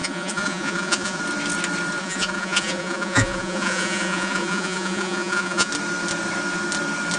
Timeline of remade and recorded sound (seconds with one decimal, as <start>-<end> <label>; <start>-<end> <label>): 0.0-1.2 remade; 1.2-2.0 recorded; 2.0-5.7 remade; 5.7-7.2 recorded